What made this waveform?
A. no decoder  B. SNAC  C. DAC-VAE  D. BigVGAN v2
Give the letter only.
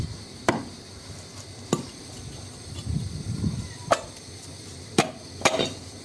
D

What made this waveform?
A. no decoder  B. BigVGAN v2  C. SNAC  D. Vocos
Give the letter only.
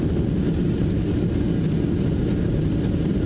A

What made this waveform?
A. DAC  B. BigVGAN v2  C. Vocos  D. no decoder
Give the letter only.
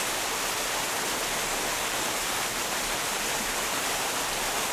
D